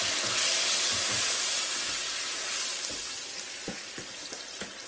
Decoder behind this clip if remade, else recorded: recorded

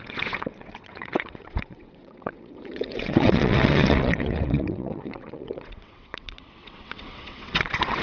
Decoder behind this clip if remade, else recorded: remade, vocoder, WaveNeXt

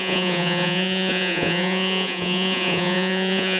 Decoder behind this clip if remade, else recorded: remade, vocoder, Vocos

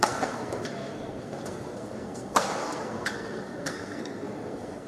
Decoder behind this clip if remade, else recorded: remade, codec, SNAC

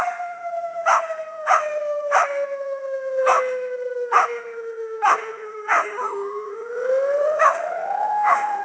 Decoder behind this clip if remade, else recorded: remade, autoencoder, DAC-VAE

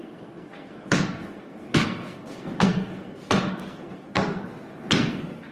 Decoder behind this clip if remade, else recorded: remade, codec, SNAC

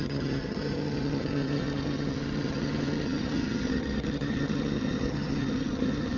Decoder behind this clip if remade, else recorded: remade, vocoder, HiFi-GAN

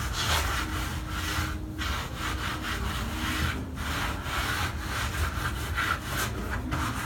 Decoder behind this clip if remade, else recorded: recorded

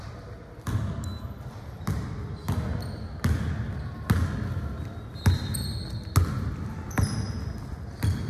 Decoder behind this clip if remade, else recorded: recorded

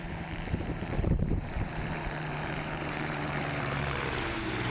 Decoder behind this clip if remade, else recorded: remade, vocoder, BigVGAN v2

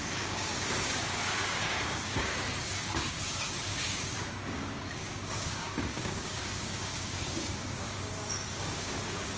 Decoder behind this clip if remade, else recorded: remade, codec, DAC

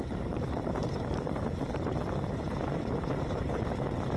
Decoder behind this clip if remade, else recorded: remade, vocoder, BigVGAN v2